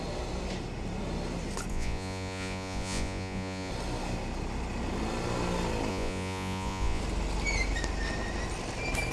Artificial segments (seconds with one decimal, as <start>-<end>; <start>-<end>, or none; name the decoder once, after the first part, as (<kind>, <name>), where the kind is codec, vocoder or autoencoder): 1.7-3.7 (vocoder, Vocos); 5.9-7.0